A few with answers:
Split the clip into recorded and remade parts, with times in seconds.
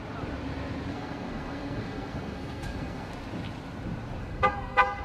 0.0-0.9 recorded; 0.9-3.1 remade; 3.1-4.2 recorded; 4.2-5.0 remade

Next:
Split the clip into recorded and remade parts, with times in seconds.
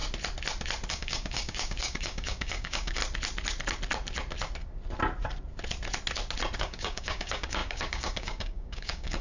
0.0-0.9 recorded; 0.9-3.0 remade; 3.0-6.6 recorded; 6.6-9.2 remade